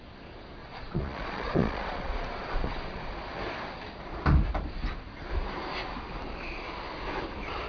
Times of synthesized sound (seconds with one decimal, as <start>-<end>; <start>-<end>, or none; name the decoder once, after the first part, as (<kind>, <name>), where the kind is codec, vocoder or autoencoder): 0.6-3.0 (vocoder, Vocos)